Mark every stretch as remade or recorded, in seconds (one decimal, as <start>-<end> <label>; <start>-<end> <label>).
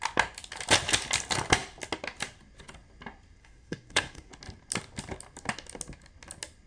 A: 0.0-3.4 recorded; 3.4-4.3 remade; 4.3-6.7 recorded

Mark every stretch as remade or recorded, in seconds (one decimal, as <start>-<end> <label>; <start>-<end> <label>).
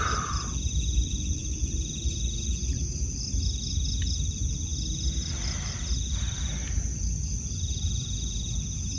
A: 0.0-9.0 recorded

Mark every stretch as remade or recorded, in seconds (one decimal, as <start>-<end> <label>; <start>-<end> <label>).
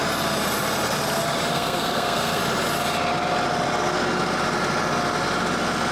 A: 0.0-1.5 recorded; 1.5-2.4 remade; 2.4-5.9 recorded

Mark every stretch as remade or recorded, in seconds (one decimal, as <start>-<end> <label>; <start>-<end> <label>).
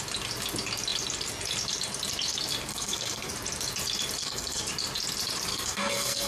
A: 0.0-2.7 recorded; 2.7-3.3 remade; 3.3-4.2 recorded; 4.2-4.7 remade; 4.7-5.5 recorded; 5.5-6.3 remade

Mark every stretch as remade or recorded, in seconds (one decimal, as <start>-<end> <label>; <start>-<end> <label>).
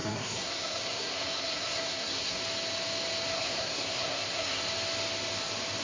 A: 0.0-2.4 remade; 2.4-3.3 recorded; 3.3-4.6 remade; 4.6-5.8 recorded